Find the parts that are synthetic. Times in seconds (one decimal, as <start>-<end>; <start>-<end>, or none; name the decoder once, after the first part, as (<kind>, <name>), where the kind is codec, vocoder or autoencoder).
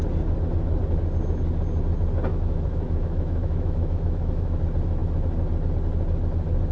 2.3-4.6 (autoencoder, DAC-VAE)